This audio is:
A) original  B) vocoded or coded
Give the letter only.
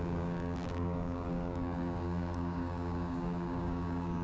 B